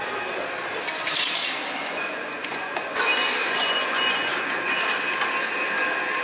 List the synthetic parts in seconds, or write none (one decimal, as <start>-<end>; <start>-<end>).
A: 1.8-3.0; 3.4-4.5